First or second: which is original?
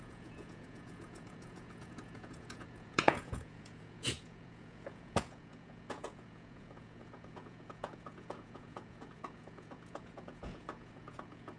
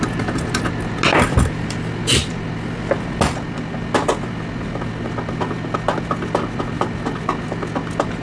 second